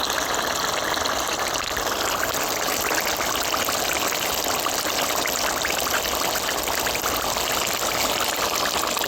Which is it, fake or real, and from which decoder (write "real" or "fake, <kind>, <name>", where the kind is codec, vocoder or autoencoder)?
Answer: real